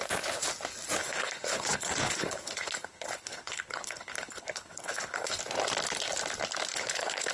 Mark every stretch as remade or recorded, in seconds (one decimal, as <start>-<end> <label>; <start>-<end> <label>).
0.0-1.0 recorded; 1.0-5.4 remade; 5.4-6.7 recorded; 6.7-7.3 remade